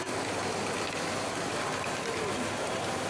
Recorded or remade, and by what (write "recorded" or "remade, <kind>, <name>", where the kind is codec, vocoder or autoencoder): recorded